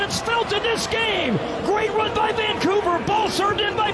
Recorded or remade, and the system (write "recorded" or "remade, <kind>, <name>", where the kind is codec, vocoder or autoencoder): remade, vocoder, BigVGAN v2